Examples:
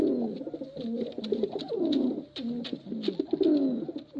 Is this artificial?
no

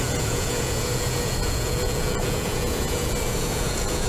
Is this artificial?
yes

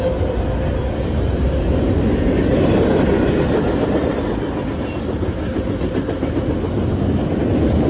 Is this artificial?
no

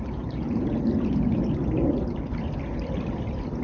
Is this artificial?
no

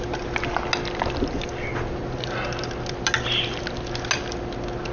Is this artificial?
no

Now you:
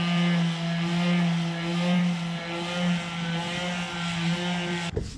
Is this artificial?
no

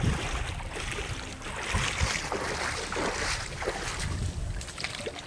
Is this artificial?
no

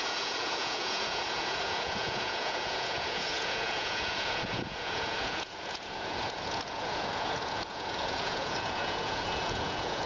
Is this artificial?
yes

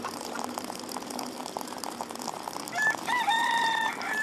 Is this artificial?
yes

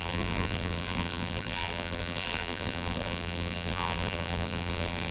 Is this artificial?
yes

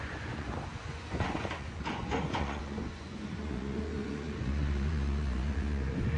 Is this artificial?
yes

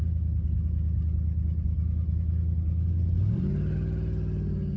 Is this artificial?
no